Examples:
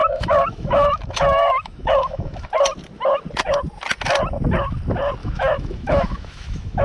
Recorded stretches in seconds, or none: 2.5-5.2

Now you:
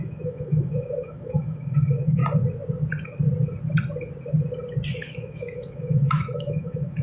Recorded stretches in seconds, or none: 2.2-4.9

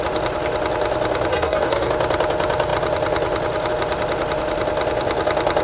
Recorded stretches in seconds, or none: 0.0-1.3; 1.9-5.6

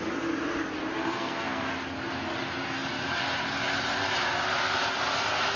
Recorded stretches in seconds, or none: 0.0-1.0; 1.7-5.6

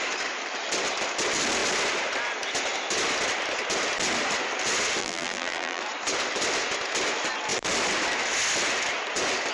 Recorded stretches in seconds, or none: 0.0-5.0; 5.8-9.5

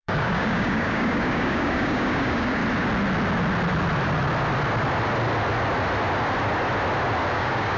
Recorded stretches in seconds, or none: 2.6-7.3